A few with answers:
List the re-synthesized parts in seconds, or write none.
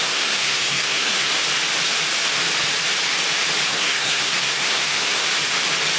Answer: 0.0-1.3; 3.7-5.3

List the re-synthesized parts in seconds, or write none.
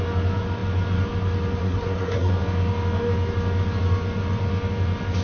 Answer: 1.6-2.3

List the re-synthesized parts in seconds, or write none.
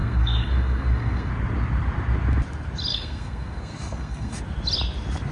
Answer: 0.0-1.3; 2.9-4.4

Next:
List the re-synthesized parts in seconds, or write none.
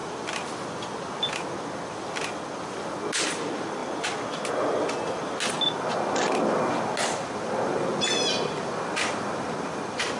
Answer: none